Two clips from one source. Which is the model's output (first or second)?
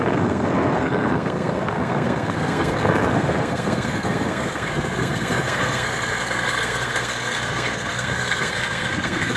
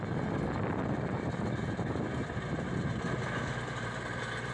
first